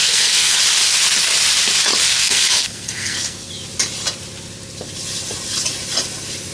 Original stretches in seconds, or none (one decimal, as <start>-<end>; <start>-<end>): 0.6-2.0; 3.5-6.5